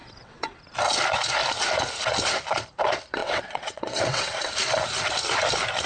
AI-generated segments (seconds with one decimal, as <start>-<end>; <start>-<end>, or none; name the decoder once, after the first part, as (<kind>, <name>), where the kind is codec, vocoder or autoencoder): 0.0-0.6 (vocoder, WaveNeXt); 3.2-4.5